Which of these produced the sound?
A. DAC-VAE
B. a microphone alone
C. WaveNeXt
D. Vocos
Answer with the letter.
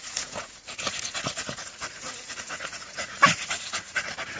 D